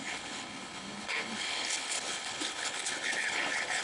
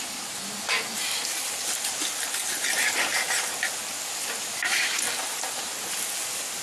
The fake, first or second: first